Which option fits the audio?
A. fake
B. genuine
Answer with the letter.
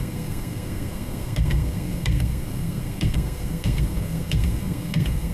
A